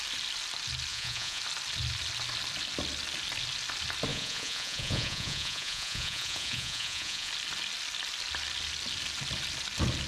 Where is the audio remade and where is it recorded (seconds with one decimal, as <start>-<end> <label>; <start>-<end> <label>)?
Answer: 0.0-0.9 recorded; 0.9-1.4 remade; 1.4-4.1 recorded; 4.1-7.3 remade; 7.3-10.1 recorded